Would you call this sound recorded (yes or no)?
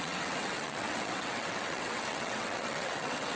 no